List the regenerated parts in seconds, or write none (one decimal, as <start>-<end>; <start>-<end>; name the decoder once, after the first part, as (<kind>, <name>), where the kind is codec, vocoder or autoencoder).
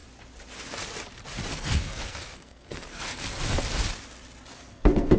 1.5-3.2 (codec, SNAC); 4.5-5.2